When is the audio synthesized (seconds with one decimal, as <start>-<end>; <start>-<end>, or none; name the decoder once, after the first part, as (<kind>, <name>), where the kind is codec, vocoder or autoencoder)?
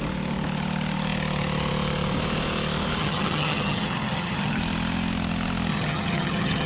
3.0-4.6 (vocoder, HiFi-GAN); 5.7-6.7